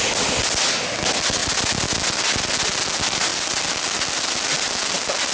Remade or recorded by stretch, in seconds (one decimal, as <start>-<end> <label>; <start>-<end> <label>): 0.0-5.3 recorded